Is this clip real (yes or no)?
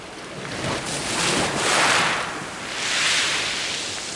yes